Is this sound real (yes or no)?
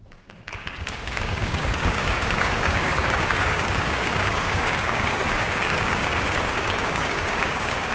no